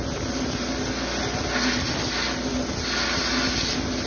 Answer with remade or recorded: recorded